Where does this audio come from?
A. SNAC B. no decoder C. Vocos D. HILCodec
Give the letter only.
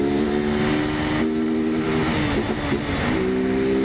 B